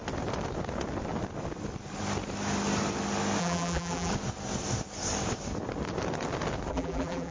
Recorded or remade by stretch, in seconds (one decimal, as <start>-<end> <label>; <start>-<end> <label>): 0.0-3.4 recorded; 3.4-4.1 remade; 4.1-6.7 recorded; 6.7-7.3 remade